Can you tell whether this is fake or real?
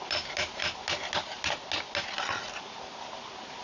real